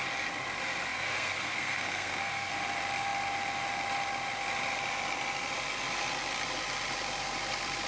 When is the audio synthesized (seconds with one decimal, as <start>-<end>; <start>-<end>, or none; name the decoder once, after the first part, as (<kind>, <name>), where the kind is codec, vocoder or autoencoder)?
0.9-2.5 (codec, SNAC)